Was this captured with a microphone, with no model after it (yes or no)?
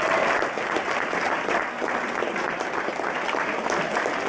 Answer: yes